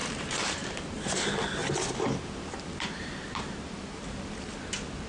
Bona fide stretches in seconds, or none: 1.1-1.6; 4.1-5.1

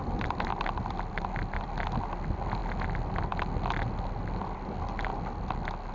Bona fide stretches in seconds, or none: 0.0-5.9

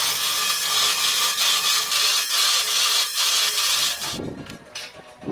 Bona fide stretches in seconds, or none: 0.0-0.9; 1.5-2.1

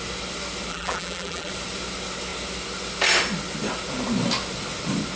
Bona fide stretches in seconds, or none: 0.0-0.7; 1.5-5.2

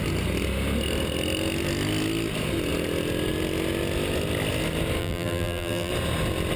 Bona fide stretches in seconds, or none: 0.0-5.0; 5.9-6.6